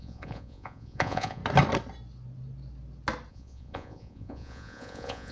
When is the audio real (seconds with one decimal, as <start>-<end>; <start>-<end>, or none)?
1.4-3.3